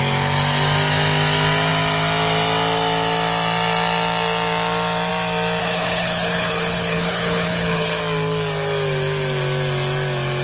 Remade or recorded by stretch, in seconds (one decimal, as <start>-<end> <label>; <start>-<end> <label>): 0.0-5.6 recorded; 5.6-8.0 remade; 8.0-10.4 recorded